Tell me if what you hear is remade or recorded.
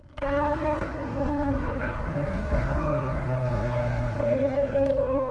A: remade